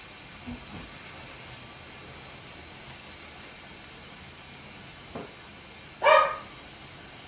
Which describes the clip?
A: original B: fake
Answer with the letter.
A